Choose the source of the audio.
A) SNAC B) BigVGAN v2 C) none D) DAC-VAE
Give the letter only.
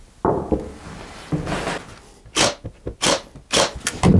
C